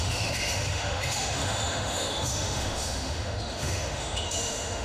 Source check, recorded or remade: remade